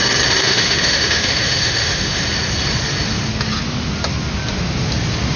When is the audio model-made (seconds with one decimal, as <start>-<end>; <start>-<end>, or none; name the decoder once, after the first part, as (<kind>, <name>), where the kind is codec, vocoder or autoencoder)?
0.4-2.2 (autoencoder, DAC-VAE)